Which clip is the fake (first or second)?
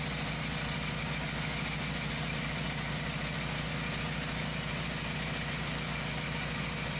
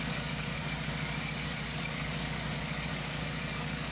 second